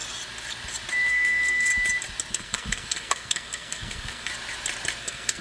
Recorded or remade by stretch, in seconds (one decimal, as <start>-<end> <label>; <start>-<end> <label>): 0.0-1.1 recorded; 1.1-1.7 remade; 1.7-2.3 recorded; 2.3-4.3 remade; 4.3-5.0 recorded; 5.0-5.4 remade